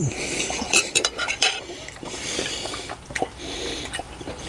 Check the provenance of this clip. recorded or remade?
remade